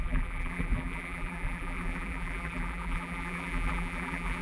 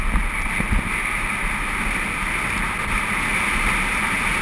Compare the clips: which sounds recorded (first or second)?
second